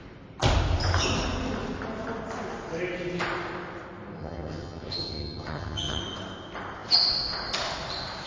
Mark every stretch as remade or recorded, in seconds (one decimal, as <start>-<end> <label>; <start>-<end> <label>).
0.0-4.2 recorded; 4.2-6.0 remade; 6.0-8.3 recorded